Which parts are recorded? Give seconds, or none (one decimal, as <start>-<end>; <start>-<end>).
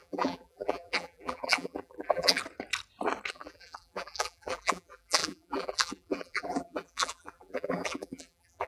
2.4-3.3